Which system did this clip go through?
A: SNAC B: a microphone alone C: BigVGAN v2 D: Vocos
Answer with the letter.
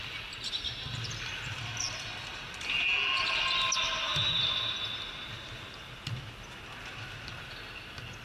B